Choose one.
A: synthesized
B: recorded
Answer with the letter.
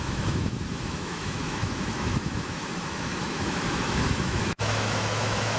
A